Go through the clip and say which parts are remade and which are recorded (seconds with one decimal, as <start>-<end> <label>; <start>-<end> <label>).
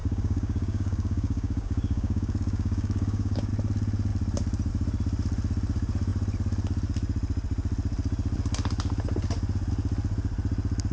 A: 0.0-3.5 remade; 3.5-10.9 recorded